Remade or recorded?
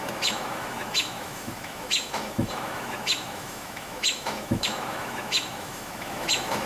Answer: remade